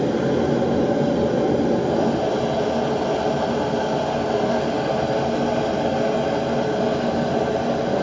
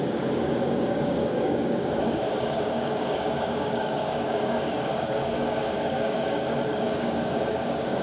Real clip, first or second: first